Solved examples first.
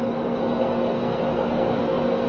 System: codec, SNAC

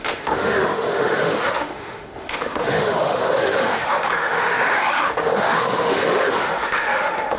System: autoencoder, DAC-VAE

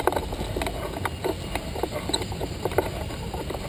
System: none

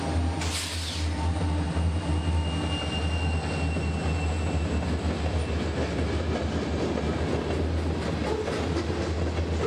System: none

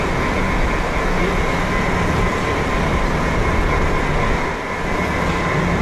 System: none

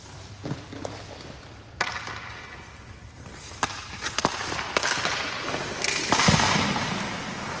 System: none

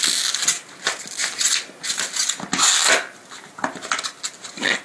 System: none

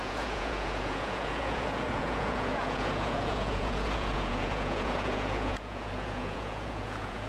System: vocoder, Vocos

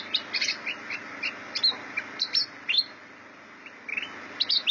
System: none